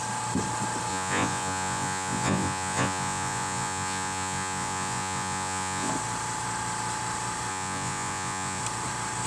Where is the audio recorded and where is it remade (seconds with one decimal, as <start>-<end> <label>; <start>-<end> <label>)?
0.0-0.9 recorded; 0.9-5.9 remade; 5.9-7.5 recorded; 7.5-8.6 remade; 8.6-9.3 recorded